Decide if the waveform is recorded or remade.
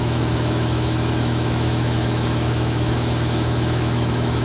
remade